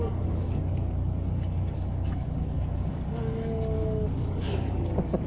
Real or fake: fake